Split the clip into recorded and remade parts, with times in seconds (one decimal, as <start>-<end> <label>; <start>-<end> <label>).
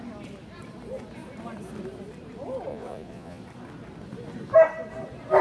0.0-2.7 recorded; 2.7-3.4 remade; 3.4-5.4 recorded